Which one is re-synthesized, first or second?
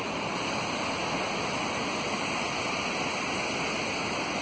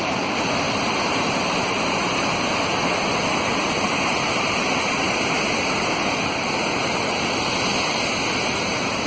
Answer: second